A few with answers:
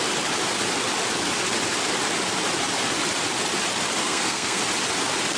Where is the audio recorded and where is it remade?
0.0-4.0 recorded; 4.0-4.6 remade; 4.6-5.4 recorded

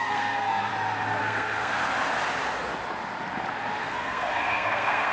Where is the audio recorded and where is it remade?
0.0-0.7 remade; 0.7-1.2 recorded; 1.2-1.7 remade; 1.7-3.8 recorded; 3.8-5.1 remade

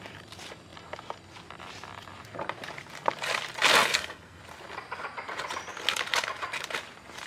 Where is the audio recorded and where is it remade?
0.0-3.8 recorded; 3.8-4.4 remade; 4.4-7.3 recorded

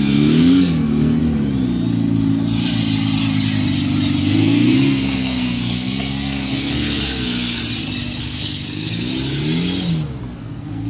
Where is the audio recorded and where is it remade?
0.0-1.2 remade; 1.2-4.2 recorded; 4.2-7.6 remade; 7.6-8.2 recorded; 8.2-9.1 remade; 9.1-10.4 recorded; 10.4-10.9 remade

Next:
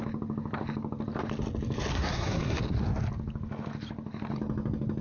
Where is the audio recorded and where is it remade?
0.0-1.9 recorded; 1.9-2.6 remade; 2.6-5.0 recorded